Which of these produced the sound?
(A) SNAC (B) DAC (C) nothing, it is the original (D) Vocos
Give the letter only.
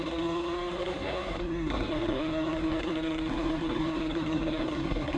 A